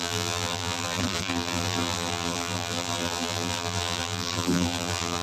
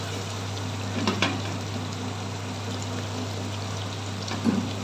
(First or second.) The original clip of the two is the second